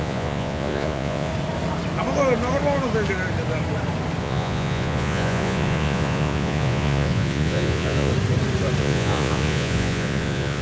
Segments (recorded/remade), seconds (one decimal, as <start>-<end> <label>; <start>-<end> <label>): 0.0-1.3 remade; 1.3-4.2 recorded; 4.2-8.1 remade; 8.1-8.8 recorded; 8.8-10.6 remade